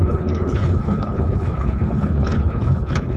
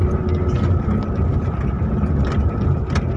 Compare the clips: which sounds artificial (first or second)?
first